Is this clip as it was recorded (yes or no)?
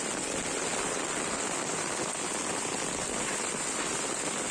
yes